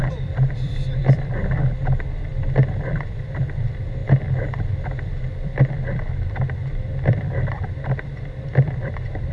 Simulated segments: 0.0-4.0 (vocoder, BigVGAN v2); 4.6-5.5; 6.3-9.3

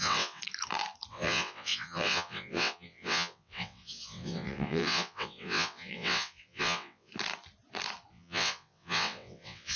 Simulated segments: 0.0-0.4 (vocoder, WaveNeXt); 1.1-7.1; 8.1-9.8

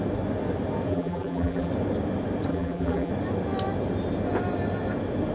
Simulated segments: 0.9-1.7 (vocoder, BigVGAN v2); 2.5-3.1

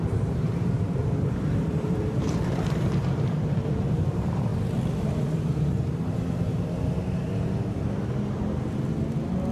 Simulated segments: 0.0-4.5 (vocoder, BigVGAN v2)